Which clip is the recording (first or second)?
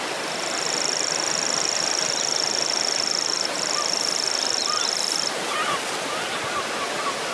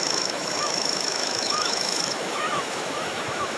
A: first